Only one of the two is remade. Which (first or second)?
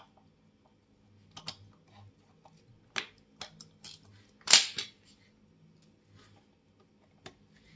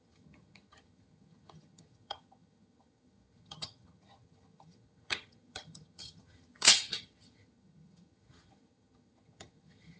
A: second